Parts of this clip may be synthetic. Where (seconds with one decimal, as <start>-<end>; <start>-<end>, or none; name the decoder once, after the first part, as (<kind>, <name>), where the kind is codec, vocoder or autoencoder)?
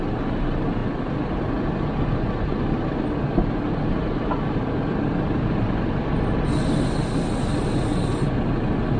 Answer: none